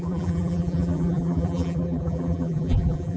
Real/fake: fake